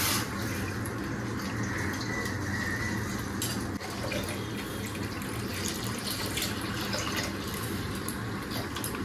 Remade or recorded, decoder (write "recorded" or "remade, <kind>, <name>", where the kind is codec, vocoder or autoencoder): recorded